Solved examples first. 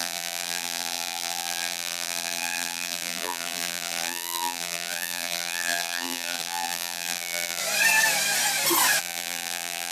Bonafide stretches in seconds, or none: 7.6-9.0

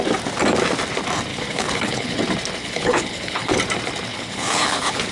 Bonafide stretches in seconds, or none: 0.0-1.3; 2.2-2.6; 3.6-4.1

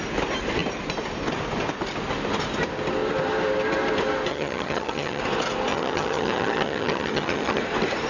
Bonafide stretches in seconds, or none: 0.0-4.3; 5.2-5.7; 7.6-8.1

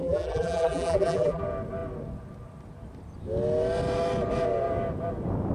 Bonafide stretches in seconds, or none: 1.4-5.5

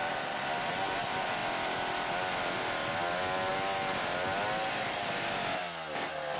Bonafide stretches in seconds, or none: 0.0-6.4